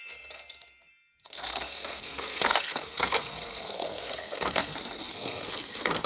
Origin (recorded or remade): remade